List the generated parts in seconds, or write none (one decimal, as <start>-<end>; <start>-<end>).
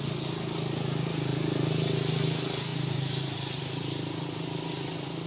none